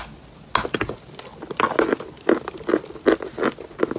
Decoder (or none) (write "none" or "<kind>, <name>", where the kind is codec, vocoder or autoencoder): none